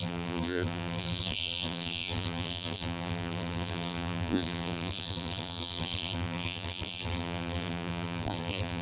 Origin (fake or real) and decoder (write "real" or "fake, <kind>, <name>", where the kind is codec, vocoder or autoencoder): fake, vocoder, BigVGAN v2